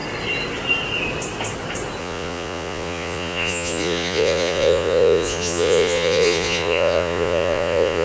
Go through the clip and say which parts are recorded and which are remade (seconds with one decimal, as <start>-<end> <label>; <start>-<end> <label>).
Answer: 0.0-2.0 recorded; 2.0-8.0 remade